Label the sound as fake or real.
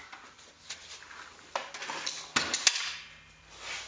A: real